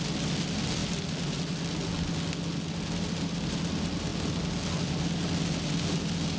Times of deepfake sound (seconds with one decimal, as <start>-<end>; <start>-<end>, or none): none